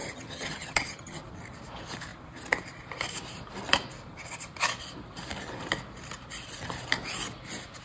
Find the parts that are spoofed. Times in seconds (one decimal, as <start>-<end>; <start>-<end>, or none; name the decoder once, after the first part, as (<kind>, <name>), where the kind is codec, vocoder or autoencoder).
0.0-1.2 (vocoder, HiFi-GAN)